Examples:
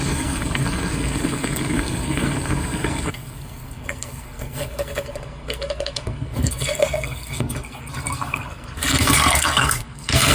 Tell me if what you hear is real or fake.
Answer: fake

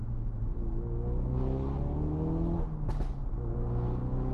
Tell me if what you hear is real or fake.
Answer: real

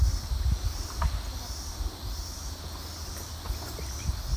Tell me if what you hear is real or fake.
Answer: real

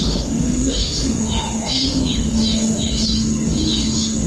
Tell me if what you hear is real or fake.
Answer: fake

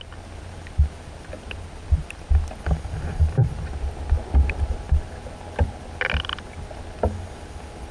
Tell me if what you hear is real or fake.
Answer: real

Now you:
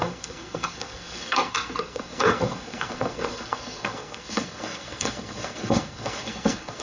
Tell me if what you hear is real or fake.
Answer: fake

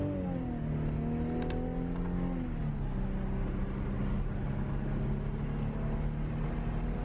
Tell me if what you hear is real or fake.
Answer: real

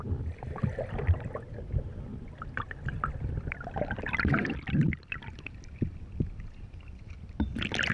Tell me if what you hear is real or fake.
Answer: fake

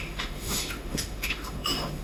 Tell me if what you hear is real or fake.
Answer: fake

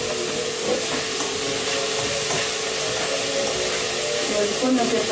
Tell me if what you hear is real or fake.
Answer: real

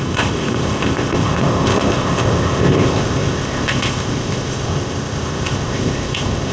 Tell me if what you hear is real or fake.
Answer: fake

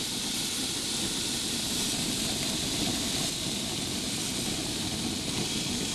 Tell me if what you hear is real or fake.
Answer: real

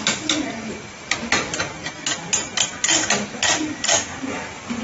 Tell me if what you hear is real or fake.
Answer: real